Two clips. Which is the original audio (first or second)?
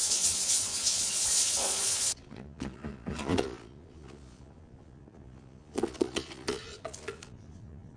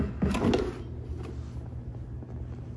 second